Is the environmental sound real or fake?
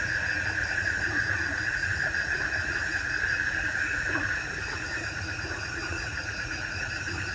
fake